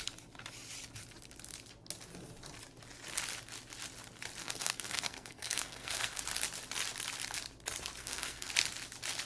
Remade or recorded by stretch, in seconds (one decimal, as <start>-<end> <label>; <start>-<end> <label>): 0.0-4.4 recorded; 4.4-6.2 remade; 6.2-8.0 recorded; 8.0-8.5 remade; 8.5-9.3 recorded